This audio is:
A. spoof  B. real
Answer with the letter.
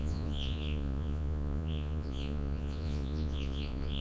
A